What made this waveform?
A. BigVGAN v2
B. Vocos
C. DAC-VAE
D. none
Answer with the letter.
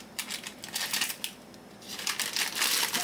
D